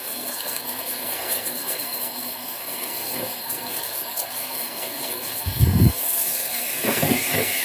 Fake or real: fake